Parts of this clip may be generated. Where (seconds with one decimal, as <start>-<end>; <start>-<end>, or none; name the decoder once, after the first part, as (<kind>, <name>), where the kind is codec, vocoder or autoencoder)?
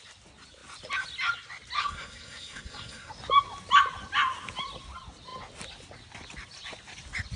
1.8-3.1 (codec, SNAC)